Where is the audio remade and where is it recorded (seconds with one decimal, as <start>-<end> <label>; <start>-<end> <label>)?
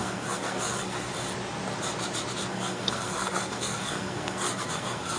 0.0-1.1 remade; 1.1-2.5 recorded; 2.5-5.2 remade